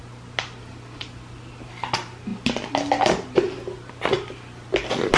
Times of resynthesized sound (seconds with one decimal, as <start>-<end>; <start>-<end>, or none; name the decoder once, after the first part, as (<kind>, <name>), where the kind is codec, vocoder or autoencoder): none